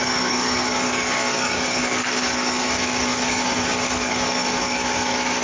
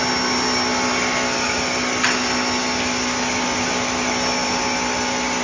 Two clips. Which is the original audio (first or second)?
second